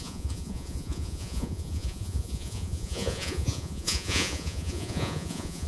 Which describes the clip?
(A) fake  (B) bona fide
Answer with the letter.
A